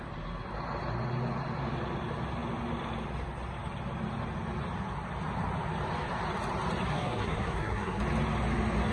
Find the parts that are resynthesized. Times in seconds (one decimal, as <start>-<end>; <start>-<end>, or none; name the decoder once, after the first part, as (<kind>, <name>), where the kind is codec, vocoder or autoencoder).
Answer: 6.9-8.0 (codec, SNAC)